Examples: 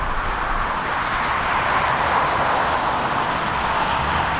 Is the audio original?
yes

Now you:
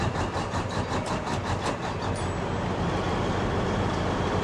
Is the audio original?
no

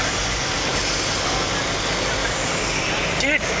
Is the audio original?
yes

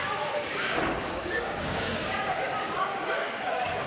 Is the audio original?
no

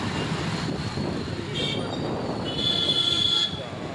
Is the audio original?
yes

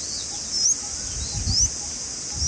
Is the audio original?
yes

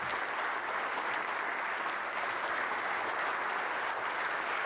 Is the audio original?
yes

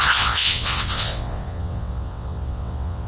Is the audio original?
no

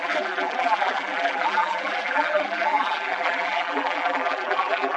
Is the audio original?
no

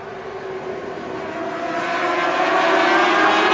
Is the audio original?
yes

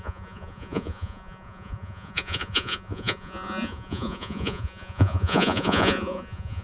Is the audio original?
no